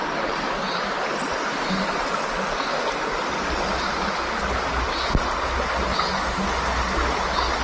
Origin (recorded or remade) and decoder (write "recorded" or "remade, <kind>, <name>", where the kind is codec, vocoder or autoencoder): recorded